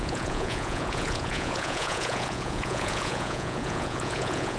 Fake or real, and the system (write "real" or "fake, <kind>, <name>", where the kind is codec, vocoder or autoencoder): fake, vocoder, Vocos